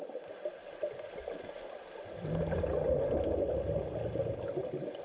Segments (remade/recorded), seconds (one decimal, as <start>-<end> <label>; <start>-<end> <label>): 0.0-5.0 recorded